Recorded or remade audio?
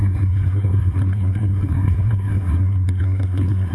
remade